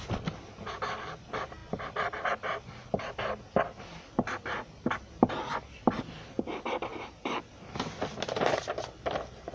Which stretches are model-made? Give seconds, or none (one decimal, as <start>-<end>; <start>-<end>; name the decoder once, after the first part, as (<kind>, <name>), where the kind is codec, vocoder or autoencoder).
6.9-7.6 (vocoder, BigVGAN v2)